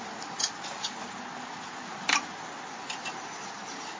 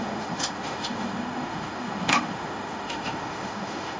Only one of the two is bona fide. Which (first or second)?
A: first